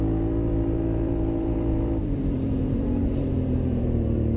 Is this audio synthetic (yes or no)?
yes